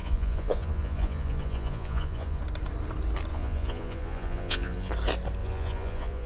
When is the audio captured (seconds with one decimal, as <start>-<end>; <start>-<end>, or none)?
2.4-3.3; 4.9-5.4